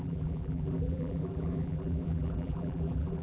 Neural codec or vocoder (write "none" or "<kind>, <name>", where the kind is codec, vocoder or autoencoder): vocoder, BigVGAN v2